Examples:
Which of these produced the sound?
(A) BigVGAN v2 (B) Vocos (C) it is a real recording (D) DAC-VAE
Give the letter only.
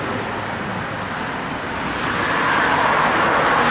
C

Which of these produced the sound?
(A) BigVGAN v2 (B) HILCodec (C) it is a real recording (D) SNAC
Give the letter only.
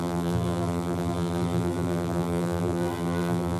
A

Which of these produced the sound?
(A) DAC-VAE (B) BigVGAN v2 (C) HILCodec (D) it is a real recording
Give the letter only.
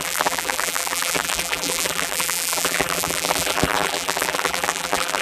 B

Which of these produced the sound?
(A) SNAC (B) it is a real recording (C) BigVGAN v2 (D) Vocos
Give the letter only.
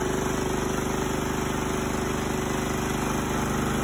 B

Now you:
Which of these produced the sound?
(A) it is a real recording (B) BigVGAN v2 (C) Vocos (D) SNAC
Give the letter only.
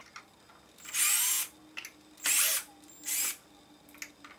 A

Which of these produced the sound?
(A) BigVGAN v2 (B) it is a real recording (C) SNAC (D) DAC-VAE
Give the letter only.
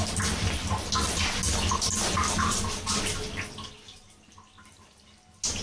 B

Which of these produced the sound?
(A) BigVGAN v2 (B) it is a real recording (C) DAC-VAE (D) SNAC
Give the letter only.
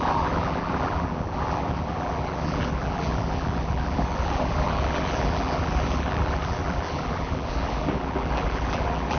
A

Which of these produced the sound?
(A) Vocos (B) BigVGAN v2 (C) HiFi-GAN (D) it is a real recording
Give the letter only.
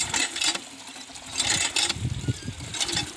D